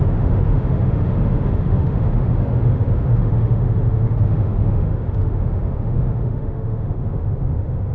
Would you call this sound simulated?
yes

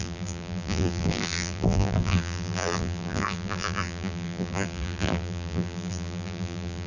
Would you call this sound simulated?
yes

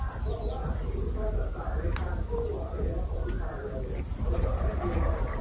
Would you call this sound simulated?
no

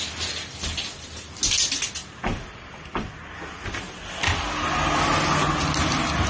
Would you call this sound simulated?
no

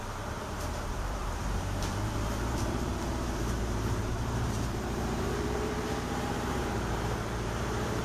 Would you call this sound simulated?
yes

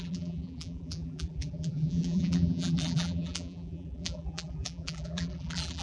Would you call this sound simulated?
yes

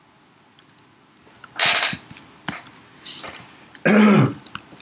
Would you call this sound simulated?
no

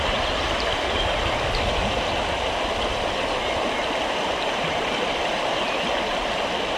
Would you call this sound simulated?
no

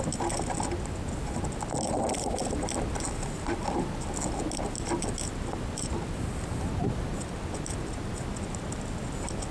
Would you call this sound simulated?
no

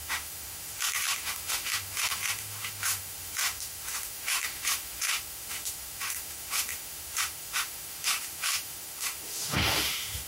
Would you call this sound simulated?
yes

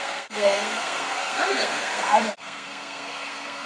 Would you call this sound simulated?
yes